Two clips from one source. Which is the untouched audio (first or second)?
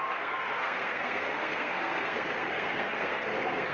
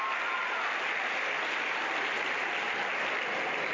second